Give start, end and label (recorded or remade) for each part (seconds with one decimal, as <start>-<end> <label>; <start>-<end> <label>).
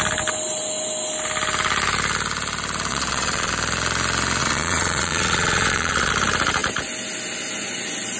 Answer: 0.0-2.9 recorded; 2.9-3.5 remade; 3.5-4.4 recorded; 4.4-6.1 remade; 6.1-8.2 recorded